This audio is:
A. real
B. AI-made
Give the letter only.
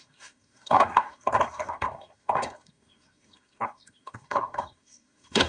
B